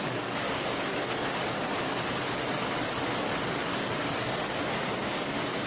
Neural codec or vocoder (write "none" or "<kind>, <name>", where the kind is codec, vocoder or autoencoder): codec, DAC